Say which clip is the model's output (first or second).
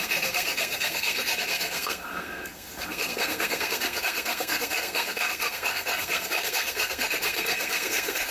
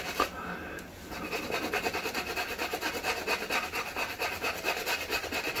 first